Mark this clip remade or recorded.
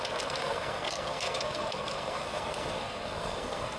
remade